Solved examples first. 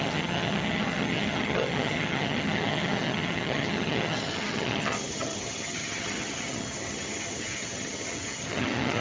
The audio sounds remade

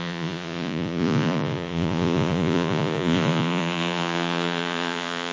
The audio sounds remade